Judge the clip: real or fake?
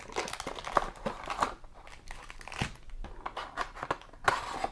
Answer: real